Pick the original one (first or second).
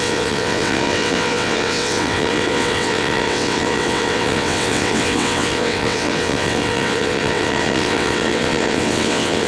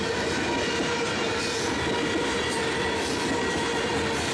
second